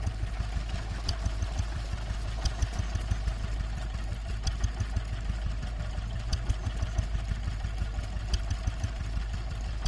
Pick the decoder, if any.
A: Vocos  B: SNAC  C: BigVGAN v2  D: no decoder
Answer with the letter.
D